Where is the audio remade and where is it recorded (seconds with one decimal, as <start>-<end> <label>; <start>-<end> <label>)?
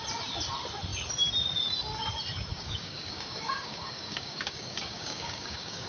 0.0-2.5 recorded; 2.5-5.9 remade